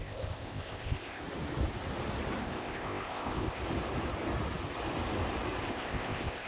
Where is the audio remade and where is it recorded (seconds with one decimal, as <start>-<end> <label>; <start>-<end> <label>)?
0.0-1.2 remade; 1.2-2.4 recorded; 2.4-3.6 remade; 3.6-5.7 recorded; 5.7-6.5 remade